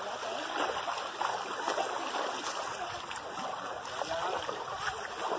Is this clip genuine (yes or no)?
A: yes